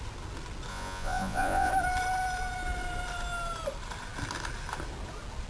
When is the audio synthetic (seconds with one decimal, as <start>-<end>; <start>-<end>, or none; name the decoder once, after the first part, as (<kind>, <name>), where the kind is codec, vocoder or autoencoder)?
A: 0.7-1.7 (vocoder, Vocos)